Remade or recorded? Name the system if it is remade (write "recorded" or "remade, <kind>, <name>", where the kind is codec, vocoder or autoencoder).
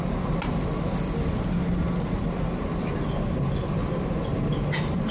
recorded